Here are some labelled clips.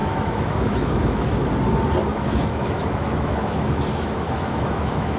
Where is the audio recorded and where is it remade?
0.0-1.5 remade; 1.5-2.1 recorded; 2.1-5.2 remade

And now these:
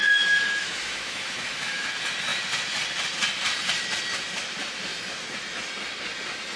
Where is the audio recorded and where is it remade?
0.0-1.9 remade; 1.9-6.6 recorded

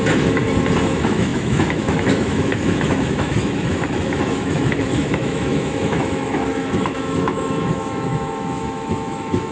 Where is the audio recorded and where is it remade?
0.0-0.4 remade; 0.4-0.9 recorded; 0.9-9.5 remade

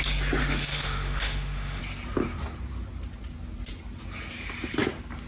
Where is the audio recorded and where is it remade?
0.0-0.4 recorded; 0.4-1.8 remade; 1.8-5.3 recorded